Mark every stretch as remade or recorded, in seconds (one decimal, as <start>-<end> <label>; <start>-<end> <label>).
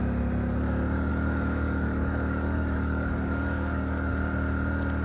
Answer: 0.0-1.1 recorded; 1.1-4.1 remade; 4.1-5.0 recorded